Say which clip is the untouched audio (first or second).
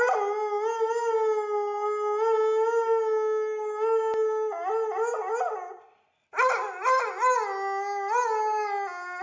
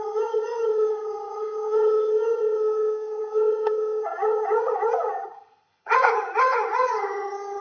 first